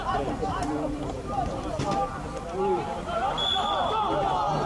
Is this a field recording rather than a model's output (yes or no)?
yes